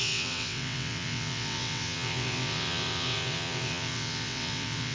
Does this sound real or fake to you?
fake